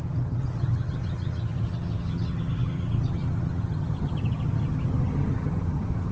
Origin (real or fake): fake